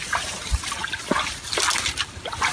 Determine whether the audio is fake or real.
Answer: real